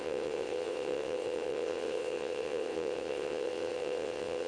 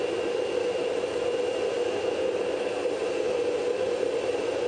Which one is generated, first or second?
first